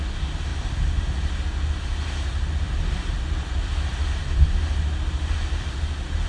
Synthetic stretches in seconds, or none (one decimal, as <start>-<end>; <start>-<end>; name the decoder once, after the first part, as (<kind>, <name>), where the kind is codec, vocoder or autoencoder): none